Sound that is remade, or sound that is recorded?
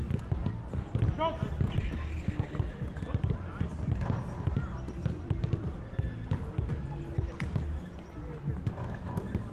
recorded